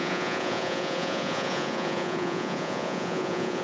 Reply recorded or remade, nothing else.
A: remade